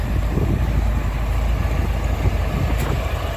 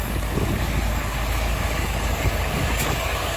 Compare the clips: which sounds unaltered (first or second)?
first